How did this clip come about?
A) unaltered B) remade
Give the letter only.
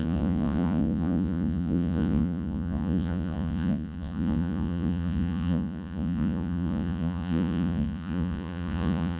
B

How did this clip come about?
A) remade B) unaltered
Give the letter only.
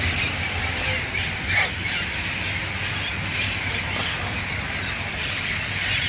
B